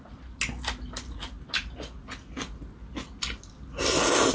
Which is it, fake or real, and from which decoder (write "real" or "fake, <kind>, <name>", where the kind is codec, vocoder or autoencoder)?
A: real